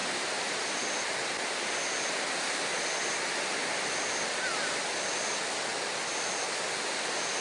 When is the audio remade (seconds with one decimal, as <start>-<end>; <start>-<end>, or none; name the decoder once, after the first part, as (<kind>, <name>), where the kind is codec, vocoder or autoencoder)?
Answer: none